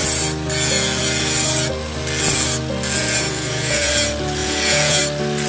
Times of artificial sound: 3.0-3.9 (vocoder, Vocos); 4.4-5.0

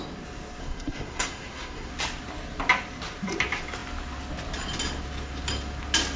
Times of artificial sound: 0.6-1.9 (codec, SNAC)

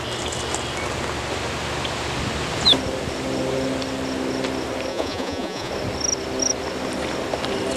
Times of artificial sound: 4.9-5.7 (vocoder, Vocos)